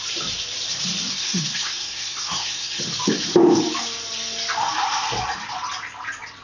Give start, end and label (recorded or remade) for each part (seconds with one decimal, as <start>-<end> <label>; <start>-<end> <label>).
0.0-1.1 recorded; 1.1-2.8 remade; 2.8-6.4 recorded